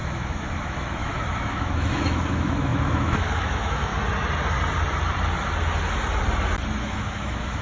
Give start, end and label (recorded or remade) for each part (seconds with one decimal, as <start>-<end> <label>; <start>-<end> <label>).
0.0-3.9 remade; 3.9-6.8 recorded; 6.8-7.6 remade